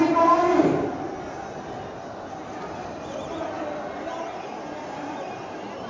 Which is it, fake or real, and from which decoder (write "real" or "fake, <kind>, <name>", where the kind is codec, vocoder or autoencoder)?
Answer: real